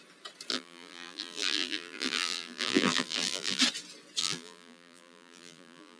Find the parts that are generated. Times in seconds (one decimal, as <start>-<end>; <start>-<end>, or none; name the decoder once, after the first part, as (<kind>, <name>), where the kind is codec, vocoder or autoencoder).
0.5-3.6 (vocoder, BigVGAN v2); 4.2-6.0